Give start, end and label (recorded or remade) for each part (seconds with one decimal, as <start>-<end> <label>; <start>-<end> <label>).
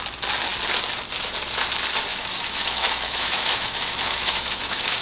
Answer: 0.0-2.1 recorded; 2.1-5.0 remade